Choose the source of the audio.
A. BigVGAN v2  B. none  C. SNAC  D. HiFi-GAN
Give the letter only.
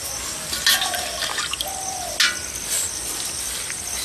B